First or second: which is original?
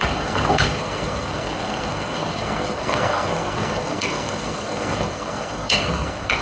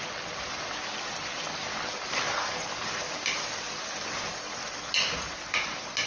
second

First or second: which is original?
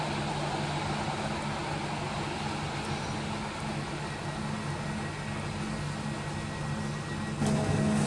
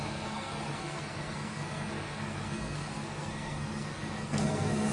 first